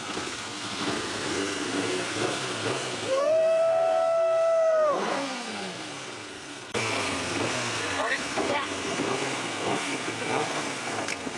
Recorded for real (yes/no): no